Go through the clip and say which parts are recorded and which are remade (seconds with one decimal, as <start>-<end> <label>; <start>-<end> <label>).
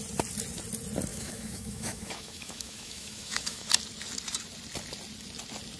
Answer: 0.0-1.1 recorded; 1.1-3.7 remade; 3.7-5.8 recorded